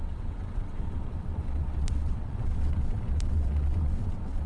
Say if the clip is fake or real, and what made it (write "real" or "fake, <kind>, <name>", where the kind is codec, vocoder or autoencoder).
fake, vocoder, WaveNeXt